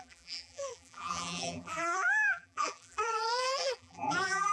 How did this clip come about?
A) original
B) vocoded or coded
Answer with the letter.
B